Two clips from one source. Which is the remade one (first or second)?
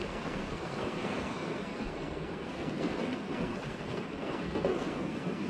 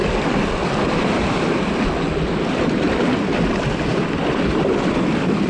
first